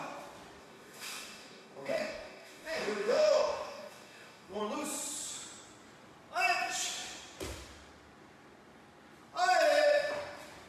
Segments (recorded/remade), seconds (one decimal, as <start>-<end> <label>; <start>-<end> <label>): 0.0-0.6 recorded; 0.6-4.6 remade; 4.6-10.7 recorded